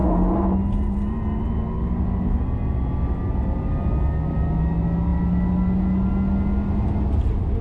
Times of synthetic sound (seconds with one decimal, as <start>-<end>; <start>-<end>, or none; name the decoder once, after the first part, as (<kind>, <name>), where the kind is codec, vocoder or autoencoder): none